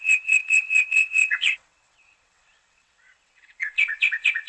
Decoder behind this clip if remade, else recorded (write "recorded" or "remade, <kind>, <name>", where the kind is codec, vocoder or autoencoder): remade, vocoder, WaveNeXt